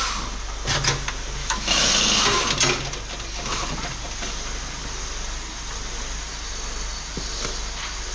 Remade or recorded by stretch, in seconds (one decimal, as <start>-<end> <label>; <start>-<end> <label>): 0.0-1.4 recorded; 1.4-1.9 remade; 1.9-8.1 recorded

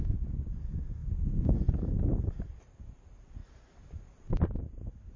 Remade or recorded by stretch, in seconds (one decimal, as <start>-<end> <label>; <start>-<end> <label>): 0.0-5.2 recorded

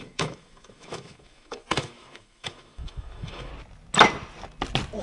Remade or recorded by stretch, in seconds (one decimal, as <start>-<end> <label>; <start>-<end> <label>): 0.0-3.5 remade; 3.5-5.0 recorded

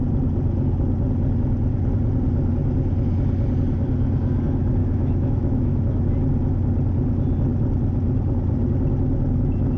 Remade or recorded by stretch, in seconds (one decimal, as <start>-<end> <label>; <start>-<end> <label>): 0.0-4.8 recorded; 4.8-6.1 remade; 6.1-9.8 recorded

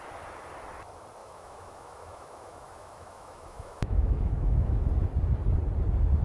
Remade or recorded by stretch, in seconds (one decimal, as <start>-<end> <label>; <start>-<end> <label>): 0.0-1.2 recorded; 1.2-4.9 remade; 4.9-6.2 recorded

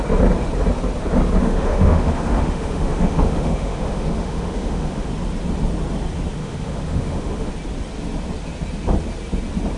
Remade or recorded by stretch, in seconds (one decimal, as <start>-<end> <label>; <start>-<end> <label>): 0.0-1.4 recorded; 1.4-5.1 remade; 5.1-6.4 recorded; 6.4-7.5 remade; 7.5-9.8 recorded